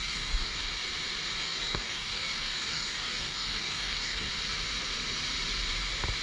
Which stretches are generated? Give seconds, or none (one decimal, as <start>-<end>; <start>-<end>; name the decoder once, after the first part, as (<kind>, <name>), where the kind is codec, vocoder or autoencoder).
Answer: 0.0-0.7 (codec, DAC); 1.4-4.3